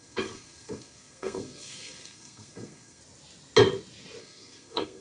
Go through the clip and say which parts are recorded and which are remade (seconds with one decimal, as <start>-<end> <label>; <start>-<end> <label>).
0.0-3.0 remade; 3.0-4.2 recorded; 4.2-5.0 remade